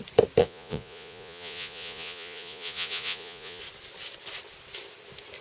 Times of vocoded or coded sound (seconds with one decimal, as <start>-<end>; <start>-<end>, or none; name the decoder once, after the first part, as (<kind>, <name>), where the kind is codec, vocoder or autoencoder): 0.4-3.6 (vocoder, Vocos)